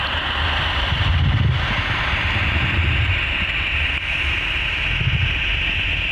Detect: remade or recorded recorded